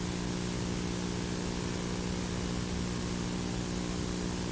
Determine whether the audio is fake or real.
real